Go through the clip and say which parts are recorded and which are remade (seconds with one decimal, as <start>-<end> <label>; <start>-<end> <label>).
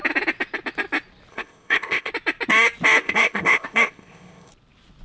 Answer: 0.0-1.3 recorded; 1.3-2.1 remade; 2.1-3.0 recorded; 3.0-4.5 remade; 4.5-5.0 recorded